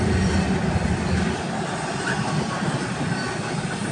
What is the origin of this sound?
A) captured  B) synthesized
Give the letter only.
A